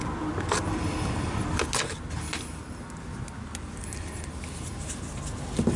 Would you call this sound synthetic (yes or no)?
no